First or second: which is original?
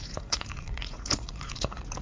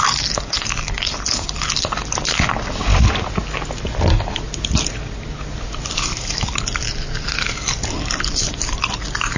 second